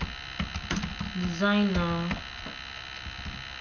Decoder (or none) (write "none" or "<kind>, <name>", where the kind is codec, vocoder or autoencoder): none